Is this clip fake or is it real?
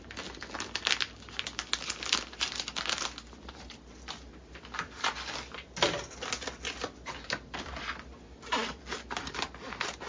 real